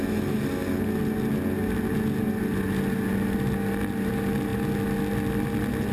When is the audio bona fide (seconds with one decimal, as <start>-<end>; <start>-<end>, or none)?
0.0-5.9